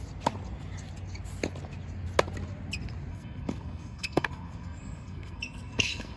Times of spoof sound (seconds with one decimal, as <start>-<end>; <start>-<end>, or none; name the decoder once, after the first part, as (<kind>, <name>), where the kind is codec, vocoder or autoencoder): 3.1-6.2 (codec, SNAC)